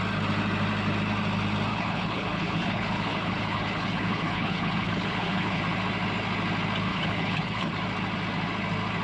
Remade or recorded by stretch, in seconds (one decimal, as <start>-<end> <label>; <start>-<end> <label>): 0.0-1.7 recorded; 1.7-5.6 remade; 5.6-6.9 recorded; 6.9-7.7 remade; 7.7-9.0 recorded